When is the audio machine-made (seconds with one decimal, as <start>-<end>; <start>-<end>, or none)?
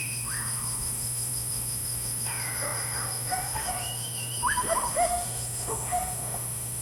0.0-6.8